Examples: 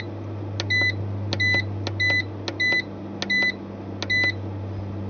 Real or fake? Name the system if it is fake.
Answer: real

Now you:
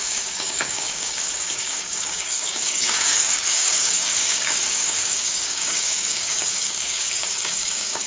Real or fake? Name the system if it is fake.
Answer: fake, codec, DAC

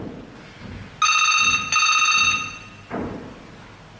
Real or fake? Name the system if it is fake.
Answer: real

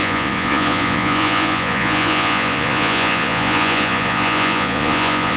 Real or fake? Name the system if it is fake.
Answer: fake, vocoder, Vocos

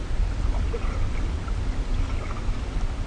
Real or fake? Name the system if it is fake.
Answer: real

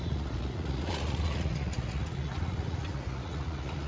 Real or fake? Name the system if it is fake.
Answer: fake, vocoder, Vocos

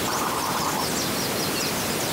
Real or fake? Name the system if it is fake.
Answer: real